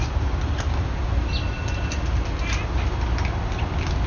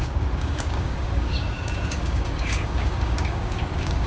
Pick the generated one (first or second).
second